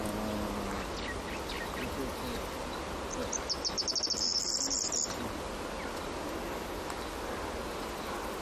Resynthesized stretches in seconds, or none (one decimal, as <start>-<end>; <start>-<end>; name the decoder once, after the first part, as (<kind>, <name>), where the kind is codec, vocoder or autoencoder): none